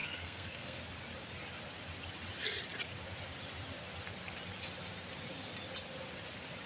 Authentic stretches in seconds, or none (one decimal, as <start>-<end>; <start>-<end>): 0.8-6.7

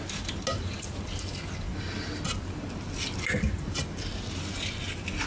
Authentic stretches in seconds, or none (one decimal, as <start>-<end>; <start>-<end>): 0.0-5.3

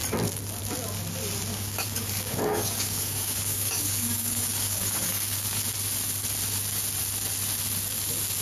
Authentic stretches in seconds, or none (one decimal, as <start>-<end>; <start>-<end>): 0.0-1.5; 5.6-8.4

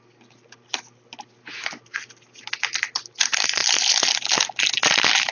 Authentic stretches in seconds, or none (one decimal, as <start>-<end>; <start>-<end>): 0.0-5.3